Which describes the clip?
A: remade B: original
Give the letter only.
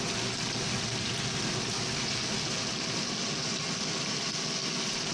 B